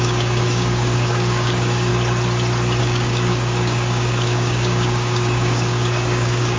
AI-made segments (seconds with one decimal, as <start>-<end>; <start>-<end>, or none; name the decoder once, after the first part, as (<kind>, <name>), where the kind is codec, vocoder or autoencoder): 0.0-1.9 (codec, DAC); 2.8-6.6